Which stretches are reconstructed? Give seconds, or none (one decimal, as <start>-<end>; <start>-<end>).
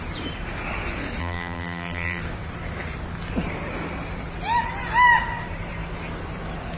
1.2-2.2